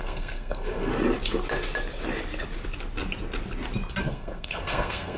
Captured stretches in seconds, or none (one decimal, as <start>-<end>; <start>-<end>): 0.9-4.0